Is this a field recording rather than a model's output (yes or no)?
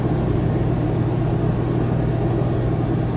yes